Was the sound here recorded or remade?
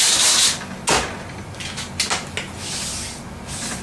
recorded